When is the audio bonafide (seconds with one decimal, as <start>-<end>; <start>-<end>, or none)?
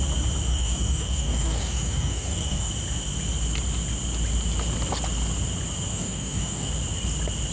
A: 0.0-0.5; 2.7-5.9; 6.7-7.5